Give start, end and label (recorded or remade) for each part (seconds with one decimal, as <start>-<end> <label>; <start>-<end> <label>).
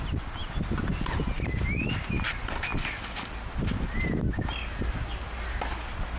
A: 0.0-6.2 recorded